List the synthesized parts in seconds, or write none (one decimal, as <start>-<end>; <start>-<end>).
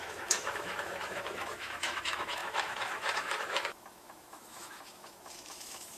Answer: 0.0-6.0